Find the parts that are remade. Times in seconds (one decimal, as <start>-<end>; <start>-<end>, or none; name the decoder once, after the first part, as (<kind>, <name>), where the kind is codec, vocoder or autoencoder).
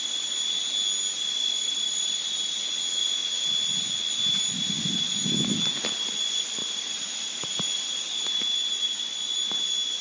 6.6-9.0 (vocoder, BigVGAN v2)